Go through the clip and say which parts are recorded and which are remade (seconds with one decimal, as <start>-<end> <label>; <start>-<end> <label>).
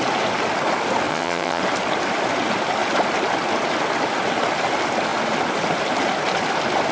0.0-1.1 recorded; 1.1-1.6 remade; 1.6-6.9 recorded